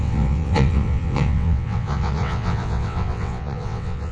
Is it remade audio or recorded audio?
remade